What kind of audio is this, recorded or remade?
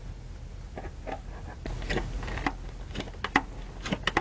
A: recorded